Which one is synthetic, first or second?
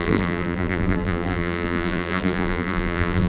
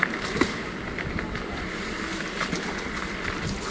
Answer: first